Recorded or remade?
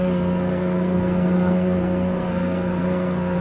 remade